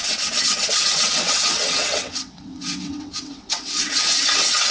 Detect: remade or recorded remade